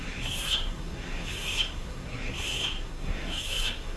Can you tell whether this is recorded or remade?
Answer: remade